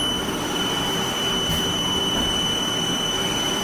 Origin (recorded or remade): remade